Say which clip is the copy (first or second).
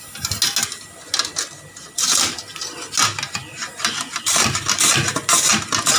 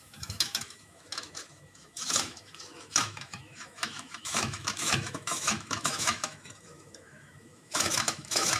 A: second